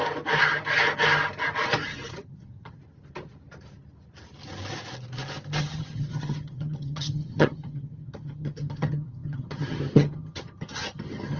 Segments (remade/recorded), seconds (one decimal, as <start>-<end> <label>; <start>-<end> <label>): 0.0-2.1 recorded; 2.1-2.8 remade; 2.8-5.6 recorded; 5.6-11.4 remade